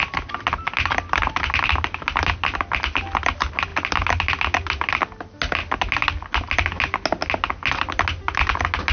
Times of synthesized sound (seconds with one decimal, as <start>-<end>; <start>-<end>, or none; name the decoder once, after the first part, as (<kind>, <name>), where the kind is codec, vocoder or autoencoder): none